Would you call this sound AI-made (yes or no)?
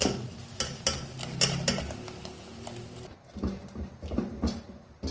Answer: no